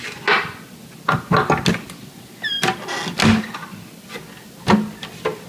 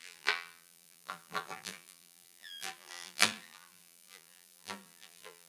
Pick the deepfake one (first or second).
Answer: second